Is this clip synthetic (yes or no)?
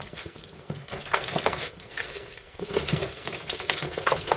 yes